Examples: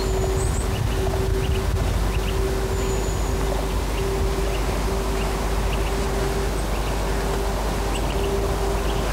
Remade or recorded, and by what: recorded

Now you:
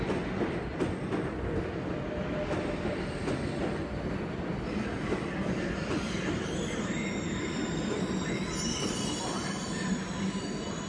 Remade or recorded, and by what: recorded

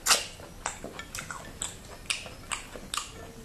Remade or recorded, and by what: recorded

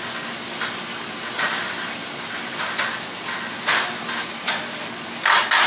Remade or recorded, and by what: recorded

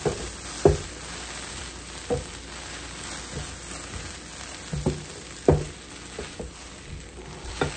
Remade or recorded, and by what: recorded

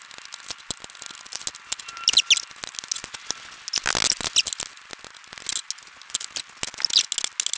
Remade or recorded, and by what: recorded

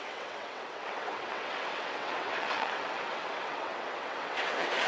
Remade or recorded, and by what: remade, vocoder, WaveNeXt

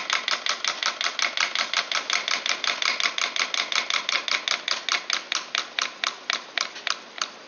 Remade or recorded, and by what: recorded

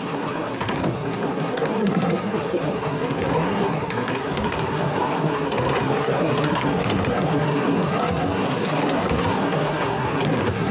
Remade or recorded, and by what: remade, codec, SNAC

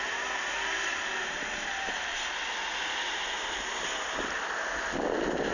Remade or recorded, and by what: recorded